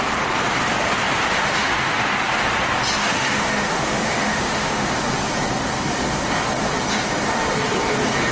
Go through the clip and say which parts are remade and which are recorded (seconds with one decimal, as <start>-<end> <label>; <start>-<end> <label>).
0.0-1.3 recorded; 1.3-2.0 remade; 2.0-3.0 recorded; 3.0-4.9 remade; 4.9-8.3 recorded